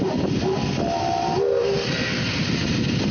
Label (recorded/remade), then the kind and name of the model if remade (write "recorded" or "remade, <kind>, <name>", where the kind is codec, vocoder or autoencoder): recorded